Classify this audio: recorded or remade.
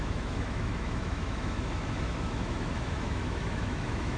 remade